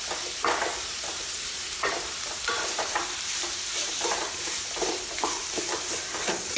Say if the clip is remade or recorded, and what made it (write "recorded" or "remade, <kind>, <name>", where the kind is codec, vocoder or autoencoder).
remade, vocoder, BigVGAN v2